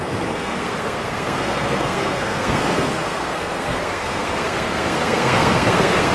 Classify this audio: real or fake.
fake